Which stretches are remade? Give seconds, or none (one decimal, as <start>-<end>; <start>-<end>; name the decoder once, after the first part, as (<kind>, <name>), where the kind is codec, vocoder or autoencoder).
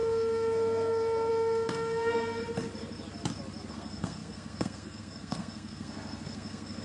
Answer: 0.0-2.4 (codec, SNAC); 3.7-6.8